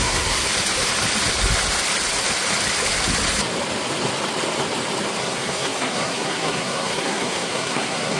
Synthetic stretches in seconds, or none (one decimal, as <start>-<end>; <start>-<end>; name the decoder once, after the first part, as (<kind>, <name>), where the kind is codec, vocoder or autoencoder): 0.0-0.5 (codec, SNAC); 5.2-8.2